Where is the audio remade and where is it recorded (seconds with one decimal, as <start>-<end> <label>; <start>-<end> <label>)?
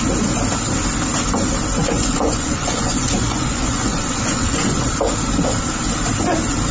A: 0.0-1.8 recorded; 1.8-4.9 remade; 4.9-6.7 recorded